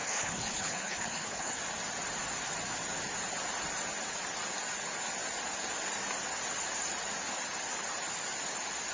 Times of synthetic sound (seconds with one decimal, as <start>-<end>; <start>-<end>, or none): 0.0-1.6